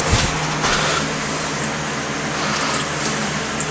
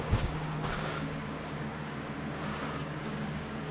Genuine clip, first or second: first